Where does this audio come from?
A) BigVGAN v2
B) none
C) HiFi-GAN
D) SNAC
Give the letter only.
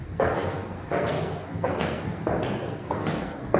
D